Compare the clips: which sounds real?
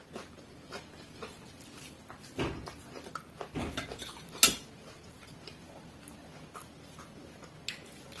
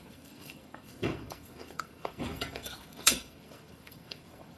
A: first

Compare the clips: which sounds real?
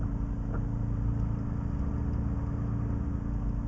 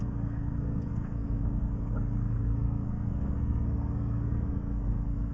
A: first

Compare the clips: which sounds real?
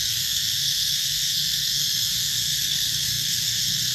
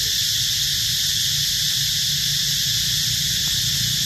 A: second